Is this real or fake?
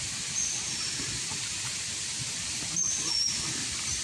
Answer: real